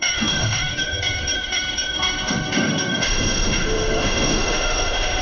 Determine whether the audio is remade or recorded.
remade